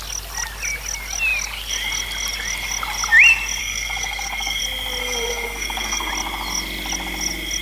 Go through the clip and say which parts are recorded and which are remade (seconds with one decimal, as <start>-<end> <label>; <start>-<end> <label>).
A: 0.0-3.6 recorded; 3.6-4.6 remade; 4.6-5.0 recorded; 5.0-6.1 remade; 6.1-7.6 recorded